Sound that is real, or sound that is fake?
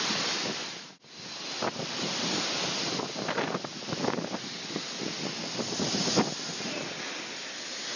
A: real